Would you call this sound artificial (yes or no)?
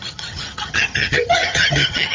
yes